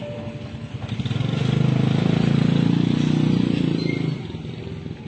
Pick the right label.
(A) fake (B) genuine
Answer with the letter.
B